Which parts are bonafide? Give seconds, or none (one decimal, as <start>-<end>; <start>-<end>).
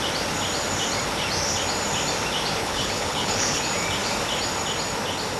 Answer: 0.0-2.6; 3.6-5.4